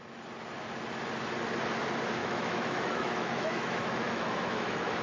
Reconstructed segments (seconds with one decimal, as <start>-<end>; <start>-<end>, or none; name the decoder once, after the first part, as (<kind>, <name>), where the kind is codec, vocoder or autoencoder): 2.2-5.0 (autoencoder, DAC-VAE)